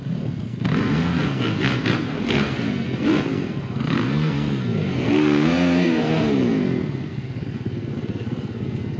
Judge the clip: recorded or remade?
remade